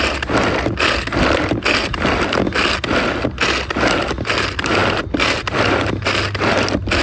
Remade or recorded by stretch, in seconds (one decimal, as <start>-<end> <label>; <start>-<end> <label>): 0.0-7.0 recorded